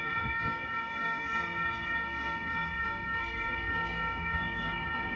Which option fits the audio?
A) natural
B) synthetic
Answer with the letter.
B